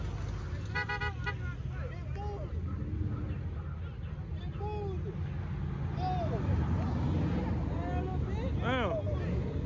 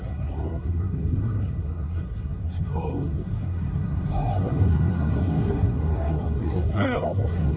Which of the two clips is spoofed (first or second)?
second